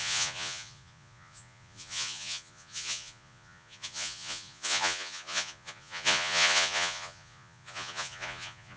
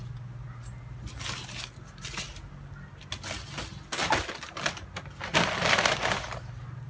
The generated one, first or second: first